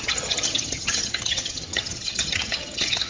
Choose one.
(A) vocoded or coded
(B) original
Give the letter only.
A